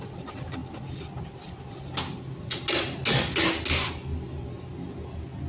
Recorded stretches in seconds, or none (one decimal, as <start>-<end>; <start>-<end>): 0.0-5.5